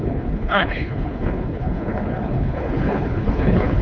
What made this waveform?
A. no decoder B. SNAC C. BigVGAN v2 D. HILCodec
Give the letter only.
D